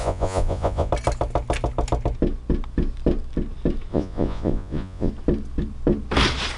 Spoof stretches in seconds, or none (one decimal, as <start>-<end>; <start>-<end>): 0.0-0.9; 3.9-5.1